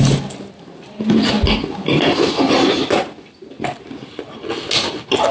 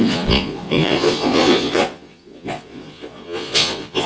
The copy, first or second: second